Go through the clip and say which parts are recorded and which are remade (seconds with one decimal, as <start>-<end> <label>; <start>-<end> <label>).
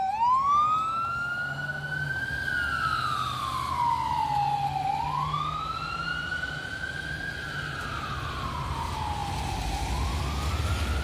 0.0-11.0 recorded